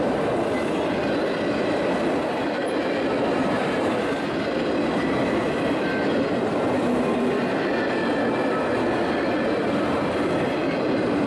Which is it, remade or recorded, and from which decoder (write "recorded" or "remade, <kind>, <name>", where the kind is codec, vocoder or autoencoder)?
recorded